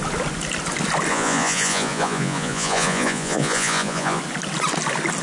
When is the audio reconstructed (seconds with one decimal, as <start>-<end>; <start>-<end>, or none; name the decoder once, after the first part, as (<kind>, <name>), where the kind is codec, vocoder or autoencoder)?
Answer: 1.1-4.2 (vocoder, Vocos)